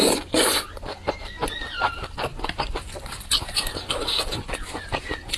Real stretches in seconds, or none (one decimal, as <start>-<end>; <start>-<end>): 0.0-5.4